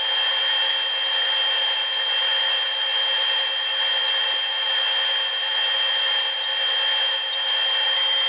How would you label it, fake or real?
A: real